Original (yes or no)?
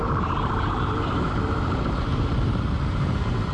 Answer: no